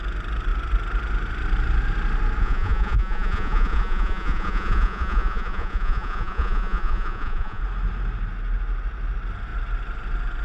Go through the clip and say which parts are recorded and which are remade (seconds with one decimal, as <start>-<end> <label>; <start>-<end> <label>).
0.0-2.4 recorded; 2.4-7.6 remade; 7.6-10.4 recorded